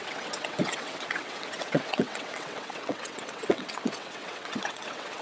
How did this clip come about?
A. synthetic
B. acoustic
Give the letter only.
A